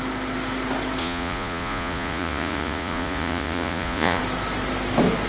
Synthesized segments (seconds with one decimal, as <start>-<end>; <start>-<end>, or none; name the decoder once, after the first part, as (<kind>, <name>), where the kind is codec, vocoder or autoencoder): 1.0-4.2 (vocoder, Vocos)